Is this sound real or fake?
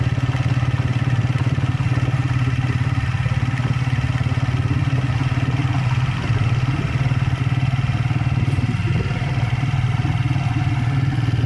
real